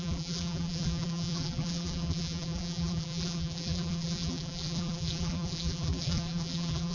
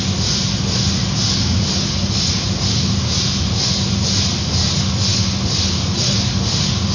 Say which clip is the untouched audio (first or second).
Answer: second